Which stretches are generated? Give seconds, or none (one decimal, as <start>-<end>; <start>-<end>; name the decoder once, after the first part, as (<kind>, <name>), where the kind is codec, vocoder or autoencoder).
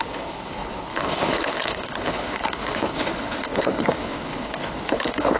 0.0-5.4 (codec, HILCodec)